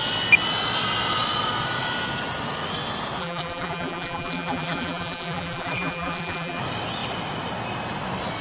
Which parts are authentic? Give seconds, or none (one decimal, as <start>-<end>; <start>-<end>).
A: 0.0-3.2; 6.6-8.4